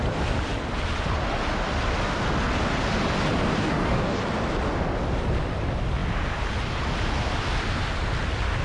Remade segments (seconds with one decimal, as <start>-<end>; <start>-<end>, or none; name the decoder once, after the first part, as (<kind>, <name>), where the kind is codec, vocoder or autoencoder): 3.5-4.2 (codec, DAC)